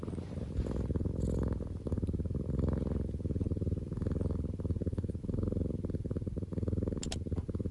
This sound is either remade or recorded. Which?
recorded